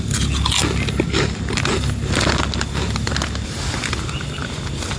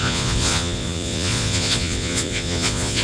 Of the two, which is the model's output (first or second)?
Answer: second